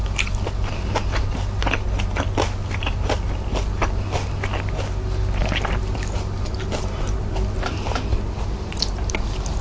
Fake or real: real